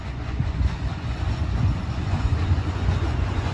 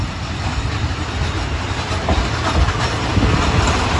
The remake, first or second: first